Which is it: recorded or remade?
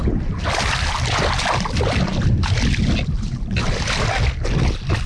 recorded